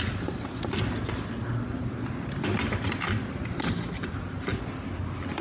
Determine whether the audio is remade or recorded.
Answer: recorded